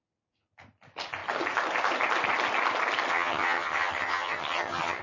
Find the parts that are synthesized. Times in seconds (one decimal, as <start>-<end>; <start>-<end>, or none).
3.1-5.0